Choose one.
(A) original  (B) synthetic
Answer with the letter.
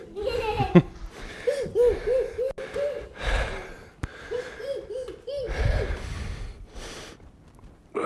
A